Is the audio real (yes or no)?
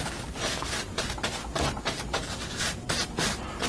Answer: no